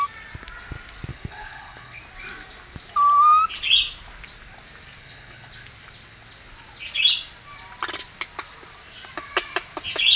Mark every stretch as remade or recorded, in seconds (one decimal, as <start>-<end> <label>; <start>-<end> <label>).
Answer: 0.0-1.1 recorded; 1.1-2.0 remade; 2.0-5.0 recorded; 5.0-5.5 remade; 5.5-10.2 recorded

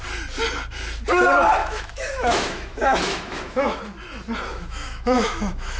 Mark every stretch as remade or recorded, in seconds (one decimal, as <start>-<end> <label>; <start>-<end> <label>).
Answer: 0.0-1.6 recorded; 1.6-3.8 remade; 3.8-4.5 recorded; 4.5-5.8 remade

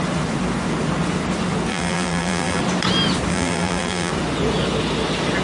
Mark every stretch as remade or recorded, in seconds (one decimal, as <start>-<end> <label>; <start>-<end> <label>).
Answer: 0.0-1.7 recorded; 1.7-2.6 remade; 2.6-3.3 recorded; 3.3-4.1 remade; 4.1-5.4 recorded

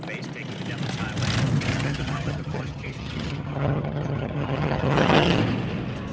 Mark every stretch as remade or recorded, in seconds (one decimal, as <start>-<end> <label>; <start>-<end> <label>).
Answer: 0.0-1.7 recorded; 1.7-5.4 remade; 5.4-6.1 recorded